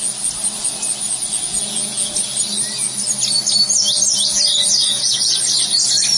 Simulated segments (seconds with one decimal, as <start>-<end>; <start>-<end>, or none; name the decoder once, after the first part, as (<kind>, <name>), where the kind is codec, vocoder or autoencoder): 1.5-2.1 (vocoder, Vocos); 4.9-5.4